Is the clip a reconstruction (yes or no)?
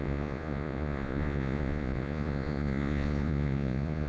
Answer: yes